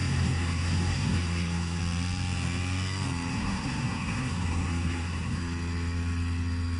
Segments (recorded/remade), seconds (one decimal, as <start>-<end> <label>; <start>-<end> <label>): 0.0-1.8 remade; 1.8-3.3 recorded; 3.3-5.4 remade; 5.4-6.8 recorded